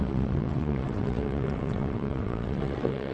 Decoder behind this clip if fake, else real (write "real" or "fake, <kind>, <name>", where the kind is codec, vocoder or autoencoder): fake, vocoder, WaveNeXt